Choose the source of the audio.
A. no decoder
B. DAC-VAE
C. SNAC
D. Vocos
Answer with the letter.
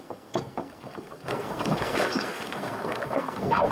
C